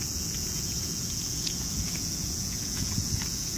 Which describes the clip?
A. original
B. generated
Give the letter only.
B